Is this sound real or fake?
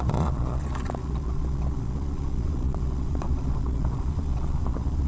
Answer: fake